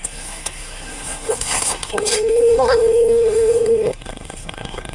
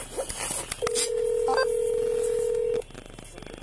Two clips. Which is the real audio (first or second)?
second